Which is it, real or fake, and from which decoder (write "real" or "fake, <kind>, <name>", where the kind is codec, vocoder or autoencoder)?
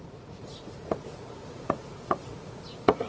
fake, vocoder, Vocos